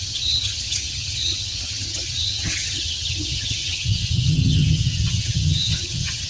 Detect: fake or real fake